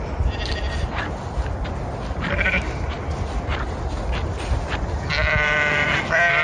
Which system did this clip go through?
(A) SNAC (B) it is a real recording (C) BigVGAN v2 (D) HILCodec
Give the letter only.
B